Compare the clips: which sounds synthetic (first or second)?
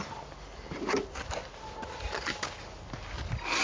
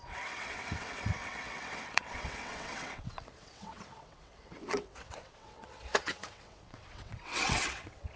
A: second